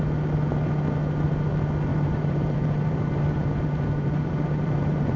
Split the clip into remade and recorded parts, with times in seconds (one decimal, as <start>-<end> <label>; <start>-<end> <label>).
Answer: 0.0-1.9 recorded; 1.9-5.2 remade